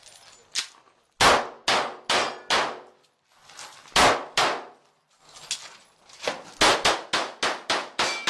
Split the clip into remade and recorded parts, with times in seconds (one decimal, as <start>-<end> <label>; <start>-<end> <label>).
0.0-8.3 recorded